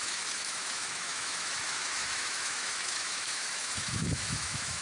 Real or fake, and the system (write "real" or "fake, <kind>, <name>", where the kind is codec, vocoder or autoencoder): fake, autoencoder, DAC-VAE